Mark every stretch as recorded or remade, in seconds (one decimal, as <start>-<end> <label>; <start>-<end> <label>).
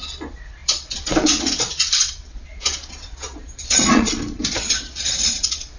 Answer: 0.0-5.8 remade